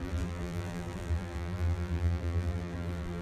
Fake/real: fake